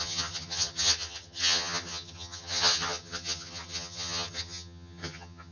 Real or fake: fake